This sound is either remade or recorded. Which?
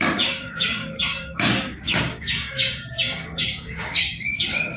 remade